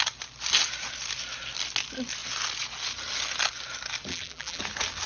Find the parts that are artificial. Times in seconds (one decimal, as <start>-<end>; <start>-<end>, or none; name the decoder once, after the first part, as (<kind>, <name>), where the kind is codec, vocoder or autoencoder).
4.1-4.6 (vocoder, BigVGAN v2)